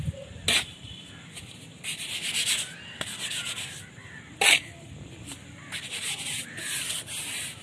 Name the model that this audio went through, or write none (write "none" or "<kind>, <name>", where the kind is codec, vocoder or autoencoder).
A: none